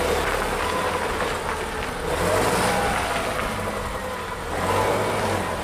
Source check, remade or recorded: recorded